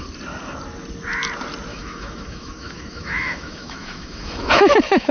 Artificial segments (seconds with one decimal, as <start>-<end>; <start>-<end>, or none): 1.7-5.1